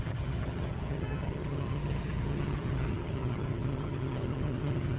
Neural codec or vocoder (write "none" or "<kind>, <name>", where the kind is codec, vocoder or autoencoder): vocoder, HiFi-GAN